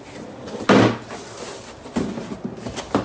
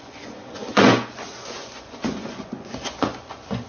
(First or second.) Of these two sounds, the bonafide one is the first